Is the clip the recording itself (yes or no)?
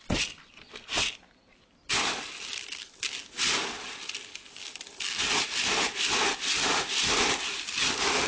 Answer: yes